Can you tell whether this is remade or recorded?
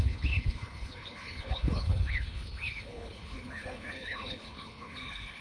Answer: remade